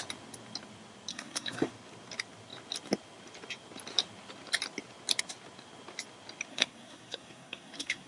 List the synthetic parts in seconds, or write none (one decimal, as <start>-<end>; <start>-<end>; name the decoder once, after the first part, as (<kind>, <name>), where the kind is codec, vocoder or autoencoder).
1.1-1.7 (codec, SNAC); 6.5-8.1